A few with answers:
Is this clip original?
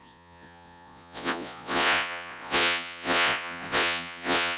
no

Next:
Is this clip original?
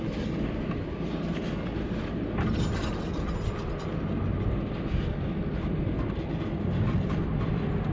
yes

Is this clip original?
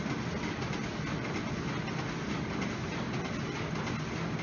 yes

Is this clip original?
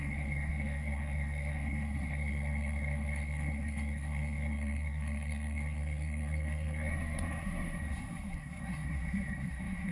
no